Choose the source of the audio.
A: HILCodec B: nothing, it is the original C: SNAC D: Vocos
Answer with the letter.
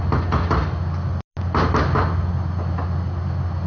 B